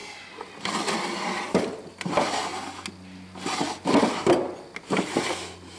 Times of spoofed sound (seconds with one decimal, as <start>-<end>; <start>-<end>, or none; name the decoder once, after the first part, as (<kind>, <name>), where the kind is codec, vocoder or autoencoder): 0.0-0.7 (vocoder, BigVGAN v2)